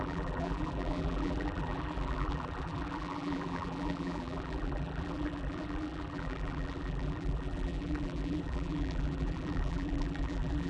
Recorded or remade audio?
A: remade